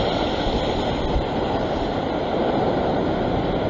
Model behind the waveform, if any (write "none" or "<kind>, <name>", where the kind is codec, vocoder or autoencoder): none